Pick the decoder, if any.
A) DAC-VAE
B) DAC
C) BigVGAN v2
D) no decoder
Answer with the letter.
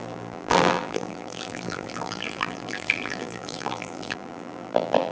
C